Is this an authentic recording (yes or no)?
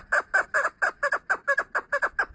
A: yes